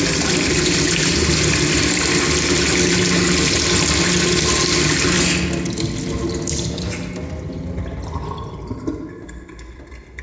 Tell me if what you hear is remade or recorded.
recorded